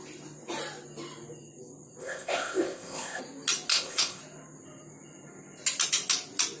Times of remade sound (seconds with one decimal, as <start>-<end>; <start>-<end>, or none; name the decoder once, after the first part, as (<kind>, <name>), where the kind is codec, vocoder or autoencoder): 2.0-3.2 (codec, ZipCodec); 3.7-4.2